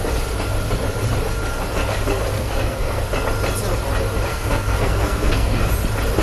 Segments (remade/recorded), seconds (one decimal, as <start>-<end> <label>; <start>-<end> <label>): 0.0-2.4 recorded; 2.4-3.0 remade; 3.0-4.3 recorded; 4.3-5.7 remade; 5.7-6.2 recorded